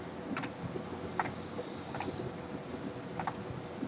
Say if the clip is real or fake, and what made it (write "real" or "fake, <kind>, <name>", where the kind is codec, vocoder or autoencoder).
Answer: real